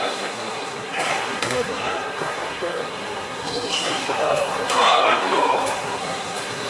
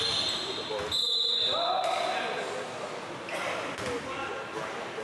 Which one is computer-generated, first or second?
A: first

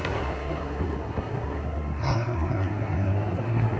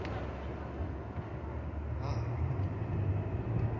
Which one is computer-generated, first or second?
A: first